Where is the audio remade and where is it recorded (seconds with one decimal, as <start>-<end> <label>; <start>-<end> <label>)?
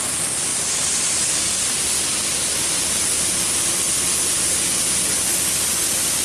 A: 0.0-6.2 recorded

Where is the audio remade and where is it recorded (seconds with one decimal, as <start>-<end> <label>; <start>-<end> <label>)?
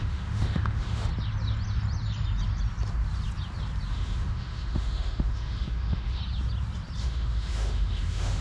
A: 0.0-1.1 remade; 1.1-3.9 recorded; 3.9-6.2 remade; 6.2-7.0 recorded; 7.0-8.4 remade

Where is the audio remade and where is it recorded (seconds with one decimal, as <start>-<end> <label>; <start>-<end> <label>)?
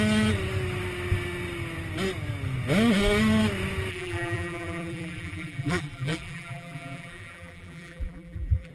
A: 0.0-3.9 recorded; 3.9-8.7 remade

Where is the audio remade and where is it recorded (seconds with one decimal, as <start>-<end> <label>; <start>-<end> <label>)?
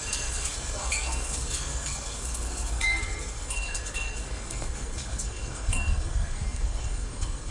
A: 0.0-7.5 remade